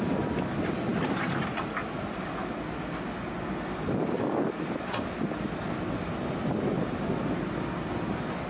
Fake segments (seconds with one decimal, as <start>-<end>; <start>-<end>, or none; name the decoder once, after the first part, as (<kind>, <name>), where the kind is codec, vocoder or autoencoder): none